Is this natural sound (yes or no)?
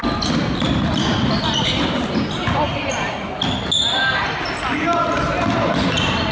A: yes